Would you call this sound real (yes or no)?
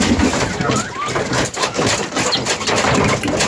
yes